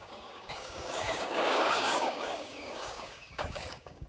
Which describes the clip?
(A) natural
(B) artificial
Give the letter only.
B